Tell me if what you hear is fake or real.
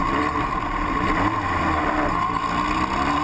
real